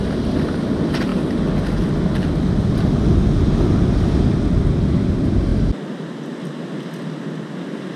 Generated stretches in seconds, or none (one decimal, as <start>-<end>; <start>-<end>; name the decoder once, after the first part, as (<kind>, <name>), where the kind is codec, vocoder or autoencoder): none